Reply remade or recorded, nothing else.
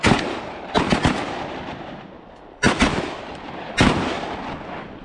remade